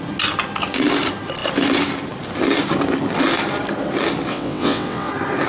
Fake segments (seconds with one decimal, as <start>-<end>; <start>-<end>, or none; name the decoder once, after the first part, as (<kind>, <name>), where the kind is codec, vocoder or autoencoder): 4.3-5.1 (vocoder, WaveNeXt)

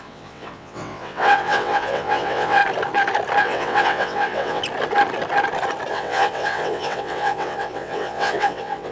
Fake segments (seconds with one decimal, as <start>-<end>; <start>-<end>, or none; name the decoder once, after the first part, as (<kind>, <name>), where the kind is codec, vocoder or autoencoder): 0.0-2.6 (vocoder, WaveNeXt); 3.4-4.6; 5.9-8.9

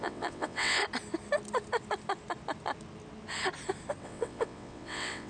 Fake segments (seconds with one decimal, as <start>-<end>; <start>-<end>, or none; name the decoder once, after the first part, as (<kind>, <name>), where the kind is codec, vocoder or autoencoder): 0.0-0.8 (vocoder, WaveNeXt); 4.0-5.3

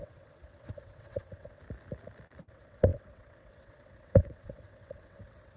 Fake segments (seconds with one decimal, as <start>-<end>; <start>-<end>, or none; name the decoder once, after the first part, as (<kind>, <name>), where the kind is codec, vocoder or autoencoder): 0.0-1.6 (vocoder, WaveNeXt); 2.5-5.6

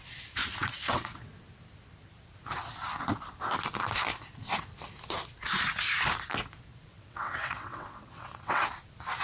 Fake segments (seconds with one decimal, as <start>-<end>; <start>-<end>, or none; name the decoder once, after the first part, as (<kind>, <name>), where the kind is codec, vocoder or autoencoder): 0.4-1.3 (vocoder, WaveNeXt); 6.9-8.6

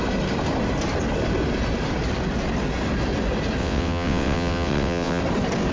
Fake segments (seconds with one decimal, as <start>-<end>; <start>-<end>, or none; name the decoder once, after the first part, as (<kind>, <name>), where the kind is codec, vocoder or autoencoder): 3.6-5.2 (vocoder, WaveNeXt)